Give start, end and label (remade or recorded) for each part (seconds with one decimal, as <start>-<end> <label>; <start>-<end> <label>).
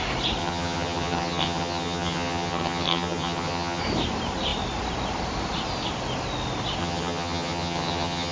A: 0.0-0.4 recorded; 0.4-3.8 remade; 3.8-6.8 recorded; 6.8-8.3 remade